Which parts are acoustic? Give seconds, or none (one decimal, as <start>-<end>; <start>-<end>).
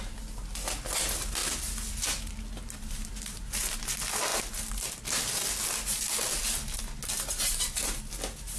0.0-8.6